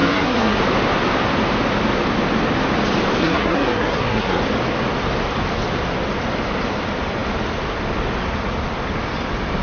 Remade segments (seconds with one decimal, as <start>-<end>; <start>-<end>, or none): 0.0-0.6; 3.2-4.4